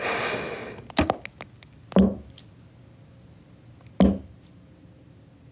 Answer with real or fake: real